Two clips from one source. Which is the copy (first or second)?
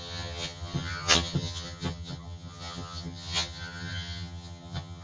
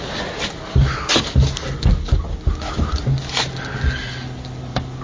first